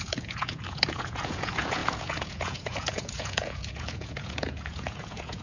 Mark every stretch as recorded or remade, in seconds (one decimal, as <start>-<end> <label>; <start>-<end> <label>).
0.0-5.4 remade